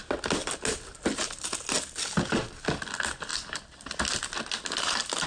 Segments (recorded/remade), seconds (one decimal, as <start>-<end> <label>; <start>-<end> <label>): 0.0-3.3 recorded; 3.3-3.9 remade; 3.9-5.3 recorded